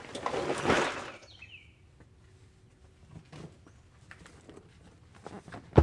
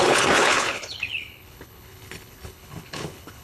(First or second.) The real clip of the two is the first